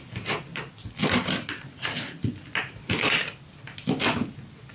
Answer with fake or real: real